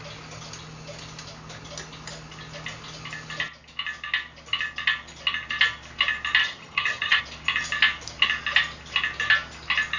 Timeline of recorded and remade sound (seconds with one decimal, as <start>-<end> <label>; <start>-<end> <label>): 0.0-6.4 recorded; 6.4-7.2 remade; 7.2-10.0 recorded